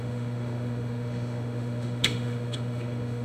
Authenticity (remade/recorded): remade